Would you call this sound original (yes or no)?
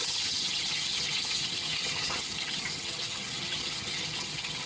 no